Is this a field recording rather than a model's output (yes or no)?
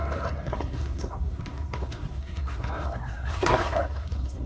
no